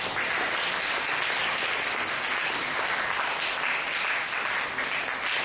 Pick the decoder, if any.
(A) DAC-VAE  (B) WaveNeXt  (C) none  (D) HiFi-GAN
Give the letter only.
C